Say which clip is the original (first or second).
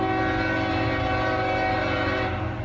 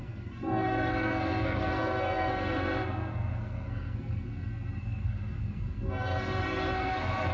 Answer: first